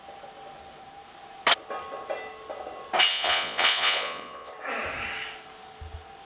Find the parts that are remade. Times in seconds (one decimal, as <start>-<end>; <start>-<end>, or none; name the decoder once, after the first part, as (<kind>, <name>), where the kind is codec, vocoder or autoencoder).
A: 3.1-4.5 (vocoder, Vocos)